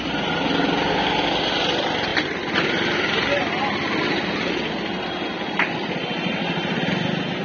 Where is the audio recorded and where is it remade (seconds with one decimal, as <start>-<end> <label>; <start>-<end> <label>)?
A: 0.0-7.4 recorded